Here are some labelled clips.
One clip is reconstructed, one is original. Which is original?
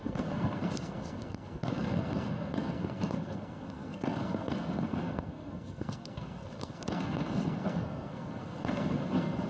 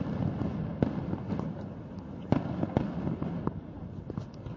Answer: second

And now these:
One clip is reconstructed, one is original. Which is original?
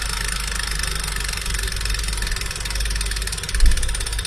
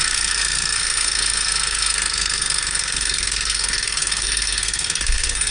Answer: first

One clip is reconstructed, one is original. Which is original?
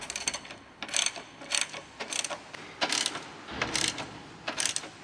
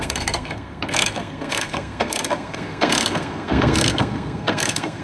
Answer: first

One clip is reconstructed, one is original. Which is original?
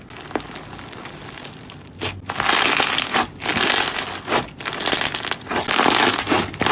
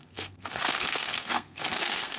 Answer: first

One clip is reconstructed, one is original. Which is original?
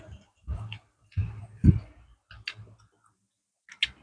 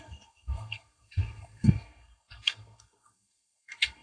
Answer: first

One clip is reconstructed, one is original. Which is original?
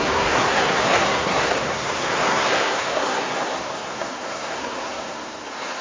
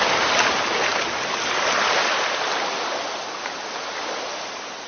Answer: second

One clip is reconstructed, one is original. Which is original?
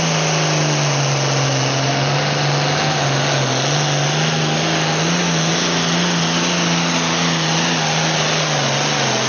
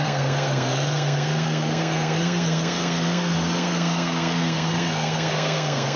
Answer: first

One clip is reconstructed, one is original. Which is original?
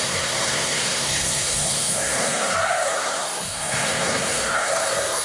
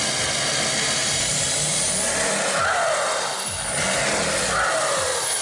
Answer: second